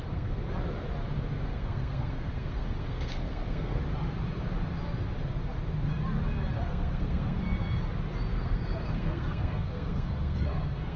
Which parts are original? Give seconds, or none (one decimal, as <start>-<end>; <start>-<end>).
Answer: 0.4-1.5; 3.8-6.5; 7.4-8.4